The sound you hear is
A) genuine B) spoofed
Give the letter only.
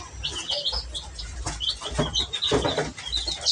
A